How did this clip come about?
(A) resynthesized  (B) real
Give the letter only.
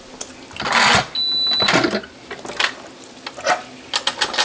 B